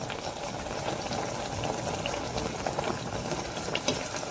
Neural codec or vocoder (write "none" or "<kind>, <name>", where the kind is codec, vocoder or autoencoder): none